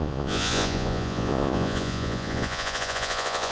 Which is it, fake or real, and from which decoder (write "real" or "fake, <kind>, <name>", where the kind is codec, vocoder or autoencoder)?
fake, vocoder, Vocos